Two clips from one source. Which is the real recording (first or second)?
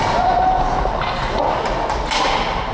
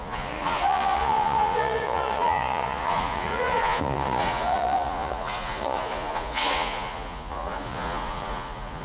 first